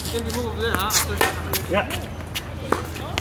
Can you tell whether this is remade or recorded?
recorded